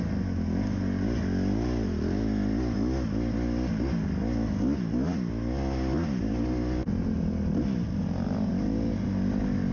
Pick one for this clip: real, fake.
real